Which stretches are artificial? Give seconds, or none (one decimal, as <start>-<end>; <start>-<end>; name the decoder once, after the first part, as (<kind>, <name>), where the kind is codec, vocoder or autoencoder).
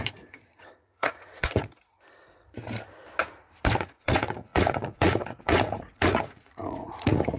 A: 0.0-1.8 (vocoder, Vocos); 3.8-7.4